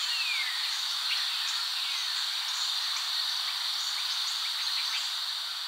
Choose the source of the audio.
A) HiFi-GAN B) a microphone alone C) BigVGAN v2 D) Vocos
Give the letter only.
B